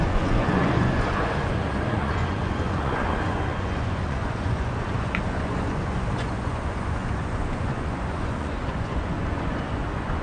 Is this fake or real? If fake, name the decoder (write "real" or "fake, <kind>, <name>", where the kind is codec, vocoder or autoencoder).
fake, vocoder, Vocos